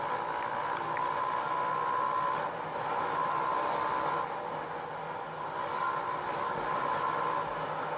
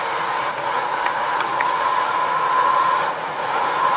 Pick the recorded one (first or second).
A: first